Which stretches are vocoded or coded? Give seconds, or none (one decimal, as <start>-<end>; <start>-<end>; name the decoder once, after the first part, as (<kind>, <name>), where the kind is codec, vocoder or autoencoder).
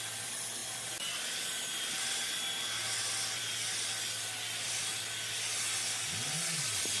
none